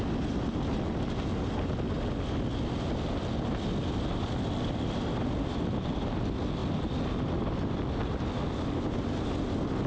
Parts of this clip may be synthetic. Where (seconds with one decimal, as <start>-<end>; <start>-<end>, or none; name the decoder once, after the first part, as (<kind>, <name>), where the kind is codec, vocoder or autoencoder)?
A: none